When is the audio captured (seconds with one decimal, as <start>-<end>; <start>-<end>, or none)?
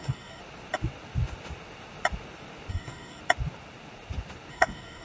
0.4-2.7; 3.2-4.5